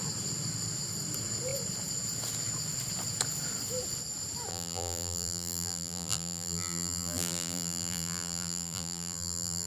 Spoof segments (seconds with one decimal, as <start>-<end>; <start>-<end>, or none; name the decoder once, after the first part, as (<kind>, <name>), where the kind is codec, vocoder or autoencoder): 4.5-9.7 (vocoder, BigVGAN v2)